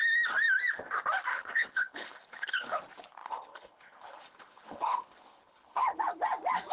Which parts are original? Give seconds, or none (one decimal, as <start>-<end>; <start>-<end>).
0.0-1.3; 2.8-3.2; 6.0-6.7